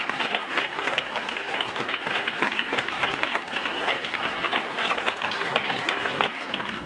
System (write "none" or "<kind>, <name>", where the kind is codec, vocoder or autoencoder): codec, SNAC